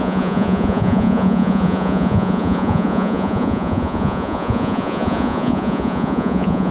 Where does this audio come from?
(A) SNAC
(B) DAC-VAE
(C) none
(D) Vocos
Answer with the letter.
D